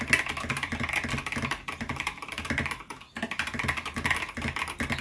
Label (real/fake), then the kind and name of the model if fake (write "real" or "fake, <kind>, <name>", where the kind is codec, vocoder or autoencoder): real